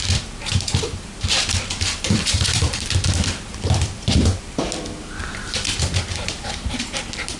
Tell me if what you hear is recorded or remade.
remade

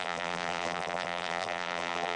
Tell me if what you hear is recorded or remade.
remade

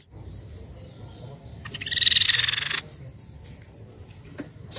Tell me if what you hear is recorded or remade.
recorded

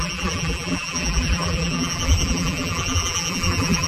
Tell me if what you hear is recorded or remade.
remade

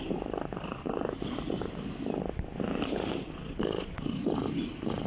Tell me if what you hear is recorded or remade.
remade